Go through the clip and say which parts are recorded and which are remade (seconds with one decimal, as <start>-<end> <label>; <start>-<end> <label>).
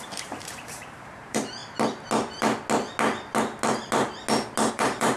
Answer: 0.0-1.6 remade; 1.6-4.7 recorded; 4.7-5.2 remade